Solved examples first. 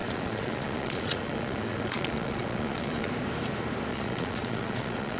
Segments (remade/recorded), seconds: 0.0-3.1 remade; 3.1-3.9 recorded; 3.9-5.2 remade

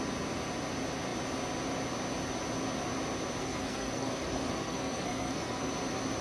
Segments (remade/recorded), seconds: 0.0-3.4 recorded; 3.4-5.7 remade; 5.7-6.2 recorded

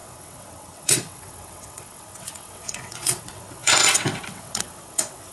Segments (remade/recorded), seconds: 0.0-5.3 remade

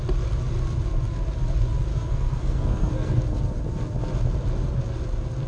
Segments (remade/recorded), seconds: 0.0-1.9 recorded; 1.9-3.2 remade; 3.2-5.5 recorded

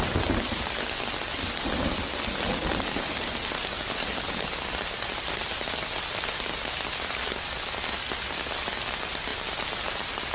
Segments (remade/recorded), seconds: 0.0-10.3 recorded

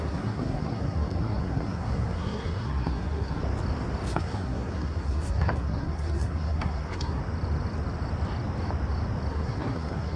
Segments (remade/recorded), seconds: 0.0-3.4 remade; 3.4-4.1 recorded; 4.1-7.2 remade; 7.2-9.3 recorded; 9.3-10.2 remade